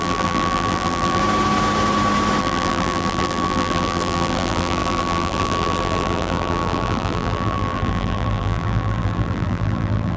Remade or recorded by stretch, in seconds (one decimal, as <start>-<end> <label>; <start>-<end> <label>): 0.0-1.2 remade; 1.2-2.4 recorded; 2.4-10.2 remade